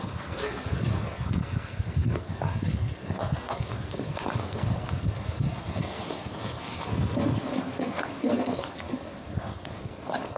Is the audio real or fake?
fake